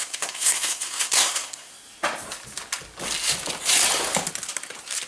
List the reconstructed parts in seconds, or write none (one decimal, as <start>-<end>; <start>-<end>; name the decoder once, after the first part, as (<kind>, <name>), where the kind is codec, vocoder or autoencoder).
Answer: 0.0-1.7 (codec, SNAC)